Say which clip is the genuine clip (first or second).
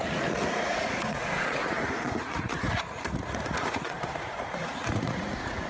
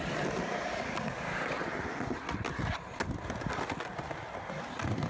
second